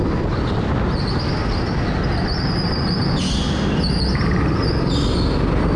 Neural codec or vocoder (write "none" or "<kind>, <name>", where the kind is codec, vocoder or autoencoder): none